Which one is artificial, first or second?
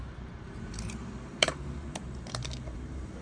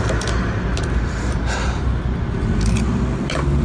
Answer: first